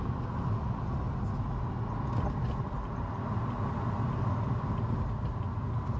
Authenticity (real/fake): real